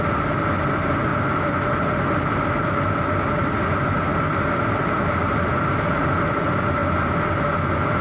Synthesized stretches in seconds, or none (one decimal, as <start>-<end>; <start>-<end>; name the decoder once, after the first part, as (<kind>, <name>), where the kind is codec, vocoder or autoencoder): none